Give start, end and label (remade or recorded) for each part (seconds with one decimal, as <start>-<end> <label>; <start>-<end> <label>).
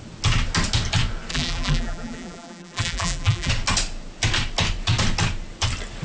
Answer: 0.0-1.3 recorded; 1.3-3.5 remade; 3.5-6.0 recorded